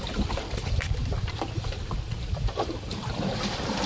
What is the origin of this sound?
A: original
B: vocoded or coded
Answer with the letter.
B